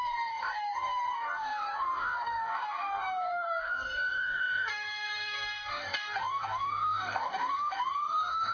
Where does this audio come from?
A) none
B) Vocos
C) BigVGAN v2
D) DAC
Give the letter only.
D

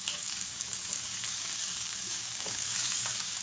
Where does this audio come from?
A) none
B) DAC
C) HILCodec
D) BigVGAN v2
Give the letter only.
B